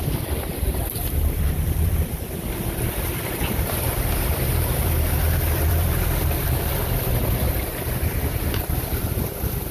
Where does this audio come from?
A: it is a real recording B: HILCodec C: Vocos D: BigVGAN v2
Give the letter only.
D